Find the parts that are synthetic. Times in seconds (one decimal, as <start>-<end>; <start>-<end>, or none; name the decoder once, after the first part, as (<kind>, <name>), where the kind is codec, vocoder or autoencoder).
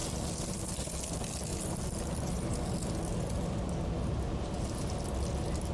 none